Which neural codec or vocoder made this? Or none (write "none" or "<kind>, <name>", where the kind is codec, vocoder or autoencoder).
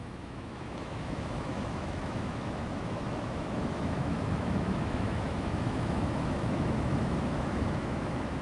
autoencoder, DAC-VAE